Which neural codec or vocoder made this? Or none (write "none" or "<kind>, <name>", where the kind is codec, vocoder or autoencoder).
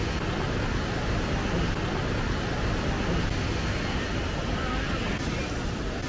none